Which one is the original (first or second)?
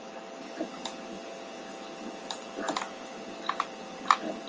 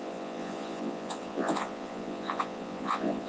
first